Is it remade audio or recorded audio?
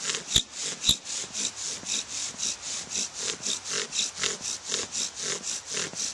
recorded